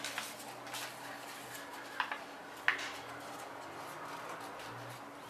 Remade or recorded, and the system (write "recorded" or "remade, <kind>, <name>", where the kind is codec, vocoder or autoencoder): recorded